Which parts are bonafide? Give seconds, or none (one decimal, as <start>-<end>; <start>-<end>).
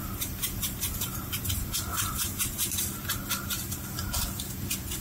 1.4-1.9; 2.8-5.0